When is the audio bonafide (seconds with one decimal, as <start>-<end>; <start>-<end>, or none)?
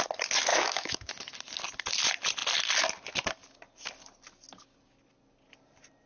0.0-0.5; 1.1-6.1